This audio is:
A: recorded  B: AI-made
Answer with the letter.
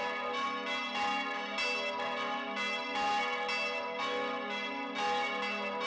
A